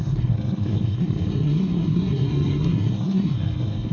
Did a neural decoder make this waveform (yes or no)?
yes